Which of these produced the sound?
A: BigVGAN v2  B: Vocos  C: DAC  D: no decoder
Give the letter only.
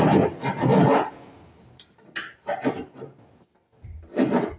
D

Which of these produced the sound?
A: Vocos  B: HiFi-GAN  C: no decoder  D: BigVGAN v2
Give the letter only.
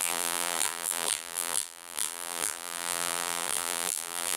D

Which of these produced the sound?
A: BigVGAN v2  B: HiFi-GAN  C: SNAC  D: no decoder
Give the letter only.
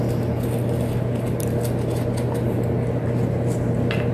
D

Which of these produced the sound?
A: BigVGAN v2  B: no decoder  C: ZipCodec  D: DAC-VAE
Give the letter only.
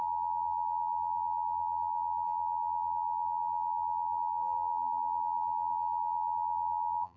A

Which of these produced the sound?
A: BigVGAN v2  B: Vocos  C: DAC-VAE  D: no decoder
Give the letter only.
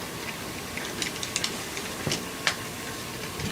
D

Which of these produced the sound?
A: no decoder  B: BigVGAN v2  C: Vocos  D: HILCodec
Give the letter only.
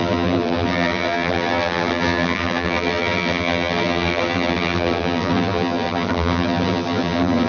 B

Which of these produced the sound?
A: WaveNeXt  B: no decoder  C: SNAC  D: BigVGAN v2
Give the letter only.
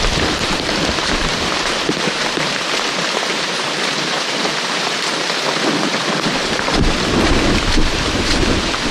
D